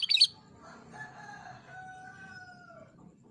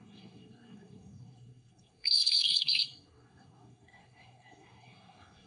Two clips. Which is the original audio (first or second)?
first